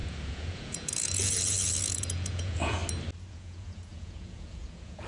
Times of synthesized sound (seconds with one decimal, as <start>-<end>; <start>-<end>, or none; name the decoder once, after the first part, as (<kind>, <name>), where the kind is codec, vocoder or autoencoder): 0.0-2.8 (vocoder, Vocos); 3.3-5.1